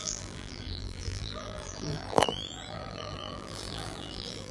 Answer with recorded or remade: remade